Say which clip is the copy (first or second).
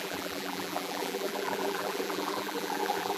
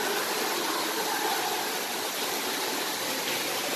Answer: first